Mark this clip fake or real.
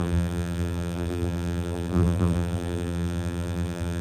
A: fake